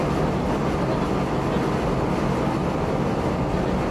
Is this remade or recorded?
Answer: recorded